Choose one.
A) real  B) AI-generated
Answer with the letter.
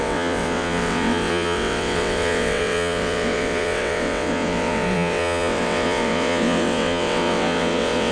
B